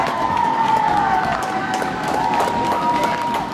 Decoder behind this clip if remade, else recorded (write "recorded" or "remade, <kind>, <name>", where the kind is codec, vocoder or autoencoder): remade, codec, DAC